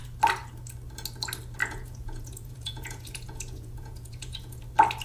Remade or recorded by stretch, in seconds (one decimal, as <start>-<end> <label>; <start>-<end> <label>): 0.0-1.6 recorded; 1.6-4.6 remade; 4.6-5.0 recorded